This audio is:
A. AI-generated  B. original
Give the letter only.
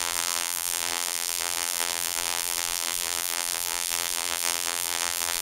A